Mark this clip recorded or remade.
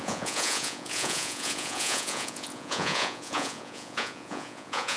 remade